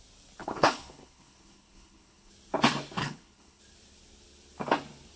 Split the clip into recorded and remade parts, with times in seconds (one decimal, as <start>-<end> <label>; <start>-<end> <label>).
0.0-0.4 recorded; 0.4-2.3 remade; 2.3-3.0 recorded; 3.0-3.6 remade; 3.6-5.2 recorded